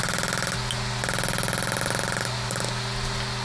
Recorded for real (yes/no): yes